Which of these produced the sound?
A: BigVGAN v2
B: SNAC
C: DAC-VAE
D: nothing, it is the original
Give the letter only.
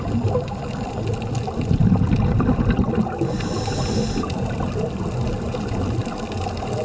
D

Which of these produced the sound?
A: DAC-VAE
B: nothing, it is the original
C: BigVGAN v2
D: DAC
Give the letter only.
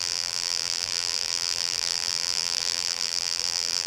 C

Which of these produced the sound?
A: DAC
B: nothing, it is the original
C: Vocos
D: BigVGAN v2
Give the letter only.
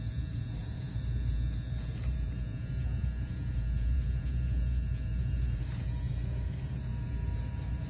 D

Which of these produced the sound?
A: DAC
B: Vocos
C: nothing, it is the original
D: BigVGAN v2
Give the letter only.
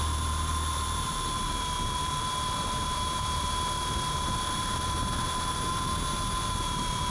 D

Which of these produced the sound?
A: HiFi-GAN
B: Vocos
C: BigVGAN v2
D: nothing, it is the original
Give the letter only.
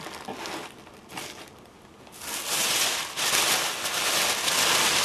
D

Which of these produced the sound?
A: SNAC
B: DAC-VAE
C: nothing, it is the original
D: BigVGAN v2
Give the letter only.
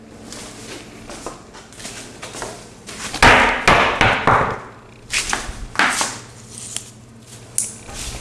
C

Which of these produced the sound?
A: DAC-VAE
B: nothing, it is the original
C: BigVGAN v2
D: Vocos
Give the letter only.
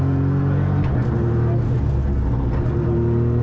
B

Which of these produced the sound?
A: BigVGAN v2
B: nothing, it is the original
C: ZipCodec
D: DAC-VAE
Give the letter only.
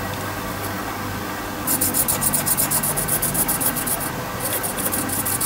B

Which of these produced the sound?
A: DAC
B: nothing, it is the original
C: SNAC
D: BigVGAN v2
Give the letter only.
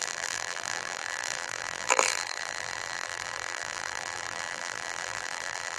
D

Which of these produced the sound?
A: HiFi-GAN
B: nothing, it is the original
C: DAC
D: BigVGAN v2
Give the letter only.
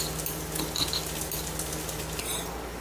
B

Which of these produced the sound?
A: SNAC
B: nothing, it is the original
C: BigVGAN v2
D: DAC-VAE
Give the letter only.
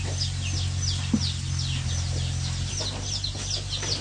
B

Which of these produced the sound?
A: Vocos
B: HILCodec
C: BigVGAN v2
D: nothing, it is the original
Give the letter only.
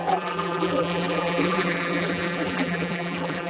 C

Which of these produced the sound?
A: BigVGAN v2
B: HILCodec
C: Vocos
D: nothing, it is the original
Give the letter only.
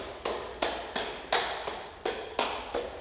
D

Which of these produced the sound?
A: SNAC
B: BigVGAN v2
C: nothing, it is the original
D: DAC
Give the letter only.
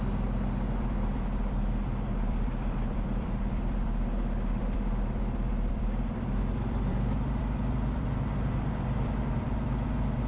B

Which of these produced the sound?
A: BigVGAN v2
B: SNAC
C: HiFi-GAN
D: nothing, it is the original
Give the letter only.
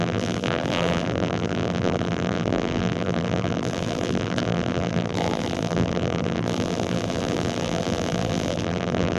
A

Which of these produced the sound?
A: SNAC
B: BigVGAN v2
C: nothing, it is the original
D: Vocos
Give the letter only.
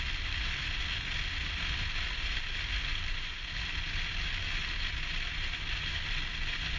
C